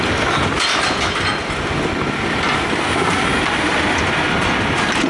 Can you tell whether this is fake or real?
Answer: real